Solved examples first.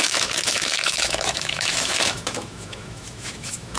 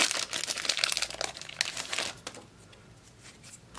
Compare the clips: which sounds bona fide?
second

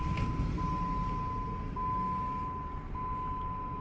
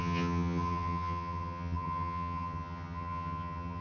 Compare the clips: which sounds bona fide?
first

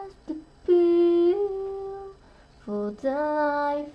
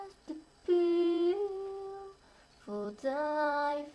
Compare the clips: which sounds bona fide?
first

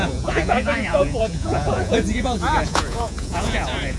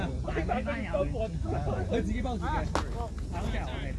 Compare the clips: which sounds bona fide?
second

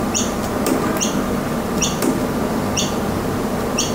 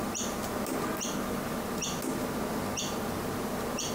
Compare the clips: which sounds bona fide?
second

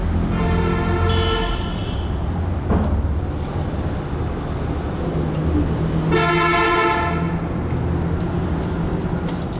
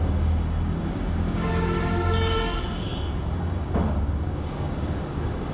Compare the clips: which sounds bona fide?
first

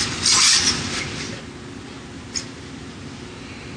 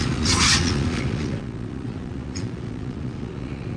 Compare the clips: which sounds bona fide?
first